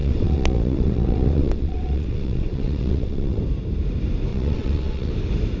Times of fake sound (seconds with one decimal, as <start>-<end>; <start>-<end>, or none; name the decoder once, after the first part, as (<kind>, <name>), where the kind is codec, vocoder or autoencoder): 0.0-3.4 (vocoder, WaveNeXt); 4.3-5.1